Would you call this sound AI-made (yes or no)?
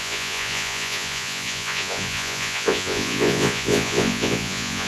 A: yes